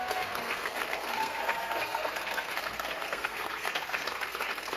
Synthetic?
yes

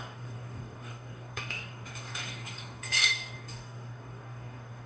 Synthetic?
yes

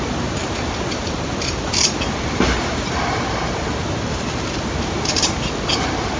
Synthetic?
no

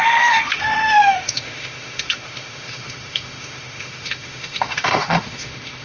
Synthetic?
yes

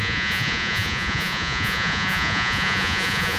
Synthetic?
yes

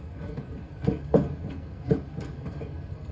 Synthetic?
yes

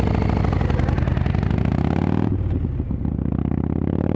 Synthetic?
no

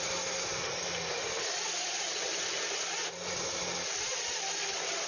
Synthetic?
no